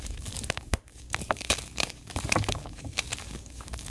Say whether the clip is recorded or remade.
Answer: remade